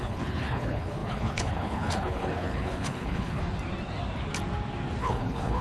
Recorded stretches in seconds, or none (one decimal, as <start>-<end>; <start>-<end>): 3.4-5.0